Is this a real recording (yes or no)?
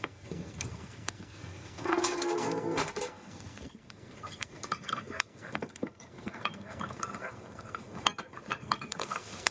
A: no